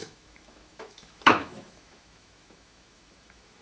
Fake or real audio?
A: fake